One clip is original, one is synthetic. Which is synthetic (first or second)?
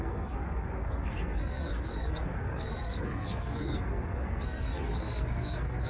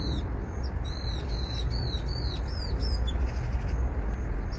first